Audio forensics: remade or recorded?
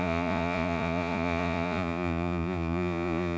remade